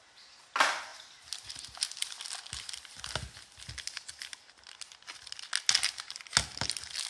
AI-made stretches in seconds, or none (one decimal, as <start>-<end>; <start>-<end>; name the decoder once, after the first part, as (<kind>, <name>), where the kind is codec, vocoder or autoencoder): none